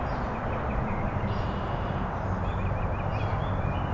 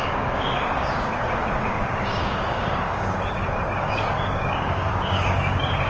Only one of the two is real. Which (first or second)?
first